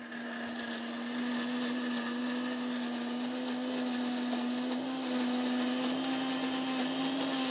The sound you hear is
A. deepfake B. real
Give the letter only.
B